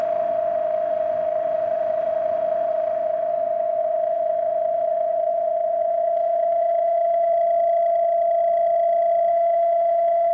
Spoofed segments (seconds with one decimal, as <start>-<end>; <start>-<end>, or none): 0.0-3.3; 3.8-7.3; 9.3-10.3